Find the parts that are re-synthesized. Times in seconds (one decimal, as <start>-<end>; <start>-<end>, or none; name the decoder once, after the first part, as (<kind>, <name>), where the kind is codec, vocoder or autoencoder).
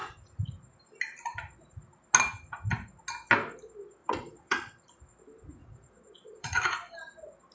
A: 4.0-5.0 (vocoder, Vocos); 5.6-6.6